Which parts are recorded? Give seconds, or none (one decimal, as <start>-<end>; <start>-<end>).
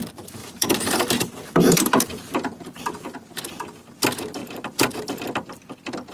0.0-0.4; 2.8-4.4; 5.0-6.1